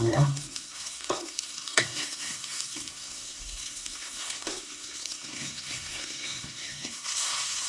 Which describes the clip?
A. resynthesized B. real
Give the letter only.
A